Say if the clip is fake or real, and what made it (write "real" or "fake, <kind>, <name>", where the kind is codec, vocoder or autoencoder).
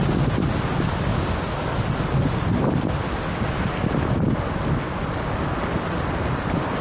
real